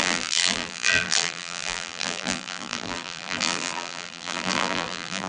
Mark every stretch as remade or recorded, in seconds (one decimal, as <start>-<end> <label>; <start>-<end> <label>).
0.0-5.3 remade